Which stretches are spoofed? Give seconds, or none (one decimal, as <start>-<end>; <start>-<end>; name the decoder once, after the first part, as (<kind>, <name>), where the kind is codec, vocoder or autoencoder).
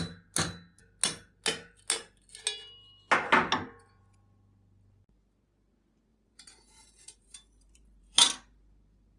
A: 6.1-9.2 (vocoder, BigVGAN v2)